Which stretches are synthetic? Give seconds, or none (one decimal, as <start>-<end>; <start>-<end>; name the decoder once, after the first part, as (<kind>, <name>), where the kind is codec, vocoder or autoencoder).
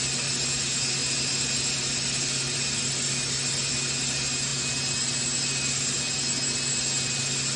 none